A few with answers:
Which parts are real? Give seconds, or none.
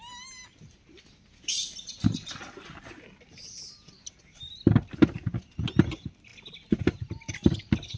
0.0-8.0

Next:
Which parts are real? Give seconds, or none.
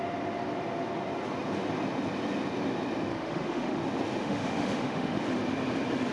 0.0-3.1; 3.8-4.2; 5.2-6.1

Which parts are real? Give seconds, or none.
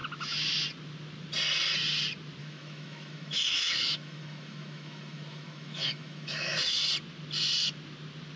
0.0-2.4; 6.8-8.4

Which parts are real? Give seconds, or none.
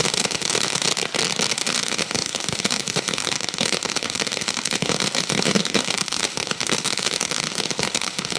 0.9-1.5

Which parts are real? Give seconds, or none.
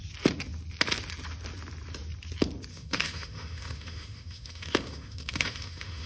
0.0-2.7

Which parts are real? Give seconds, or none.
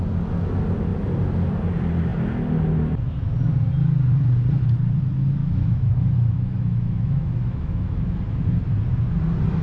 0.0-5.4; 8.2-9.6